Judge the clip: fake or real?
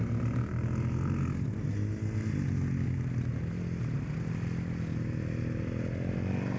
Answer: real